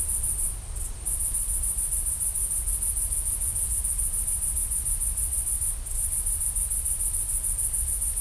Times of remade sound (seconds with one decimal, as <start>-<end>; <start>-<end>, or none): 2.4-3.8